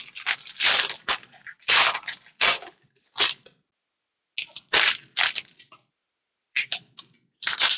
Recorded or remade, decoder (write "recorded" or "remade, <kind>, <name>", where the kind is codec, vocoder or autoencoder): recorded